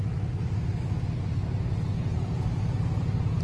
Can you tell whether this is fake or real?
real